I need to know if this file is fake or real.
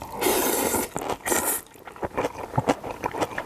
real